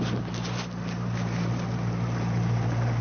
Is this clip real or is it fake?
real